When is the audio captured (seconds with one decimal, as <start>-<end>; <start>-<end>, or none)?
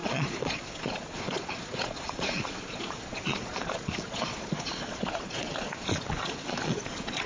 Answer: none